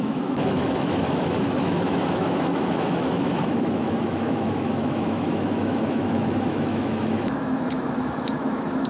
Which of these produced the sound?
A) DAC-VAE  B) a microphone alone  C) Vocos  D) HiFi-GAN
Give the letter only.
A